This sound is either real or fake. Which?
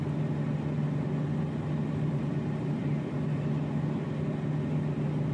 real